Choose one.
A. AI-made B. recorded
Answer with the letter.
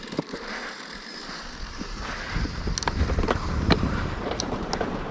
A